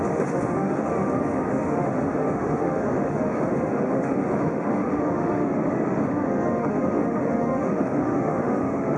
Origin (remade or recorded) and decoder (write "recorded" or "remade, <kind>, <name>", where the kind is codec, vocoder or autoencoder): remade, autoencoder, DAC-VAE